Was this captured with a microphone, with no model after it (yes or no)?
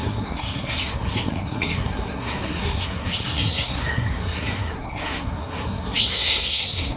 no